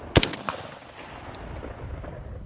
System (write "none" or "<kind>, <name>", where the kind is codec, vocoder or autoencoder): none